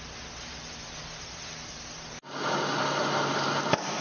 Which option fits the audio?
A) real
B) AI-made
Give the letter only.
A